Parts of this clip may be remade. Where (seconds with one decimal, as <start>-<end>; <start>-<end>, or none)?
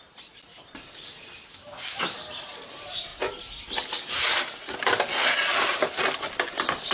1.5-2.2